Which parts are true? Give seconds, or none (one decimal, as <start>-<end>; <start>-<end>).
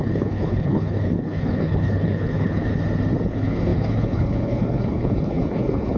2.7-3.3